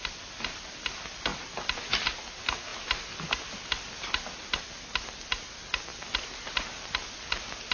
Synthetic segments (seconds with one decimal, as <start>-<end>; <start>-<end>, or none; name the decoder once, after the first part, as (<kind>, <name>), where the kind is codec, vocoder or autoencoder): none